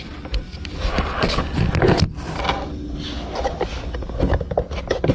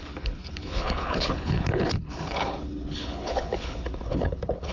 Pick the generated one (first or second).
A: second